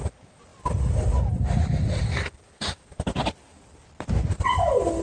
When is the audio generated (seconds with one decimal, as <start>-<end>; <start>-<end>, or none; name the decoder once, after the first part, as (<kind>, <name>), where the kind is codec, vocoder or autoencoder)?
none